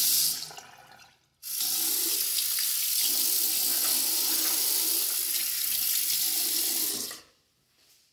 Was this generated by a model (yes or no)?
no